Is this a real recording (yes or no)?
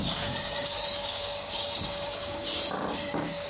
no